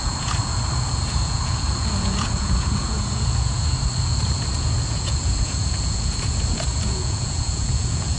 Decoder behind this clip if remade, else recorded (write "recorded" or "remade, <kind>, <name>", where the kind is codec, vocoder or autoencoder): remade, vocoder, Vocos